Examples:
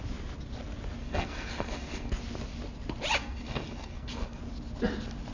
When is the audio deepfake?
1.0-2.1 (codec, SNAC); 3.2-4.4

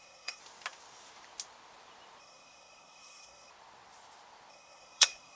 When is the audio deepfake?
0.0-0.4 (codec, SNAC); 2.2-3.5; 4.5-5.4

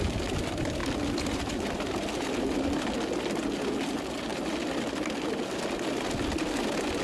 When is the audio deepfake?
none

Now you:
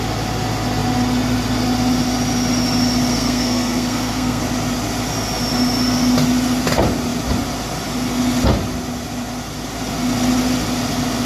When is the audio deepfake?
3.1-4.4 (codec, SNAC)